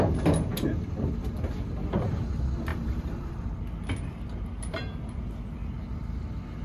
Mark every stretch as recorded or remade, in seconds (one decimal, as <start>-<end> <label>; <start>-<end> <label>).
0.0-2.7 recorded; 2.7-3.3 remade; 3.3-6.6 recorded